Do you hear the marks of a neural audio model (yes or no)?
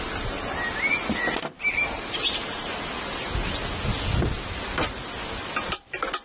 no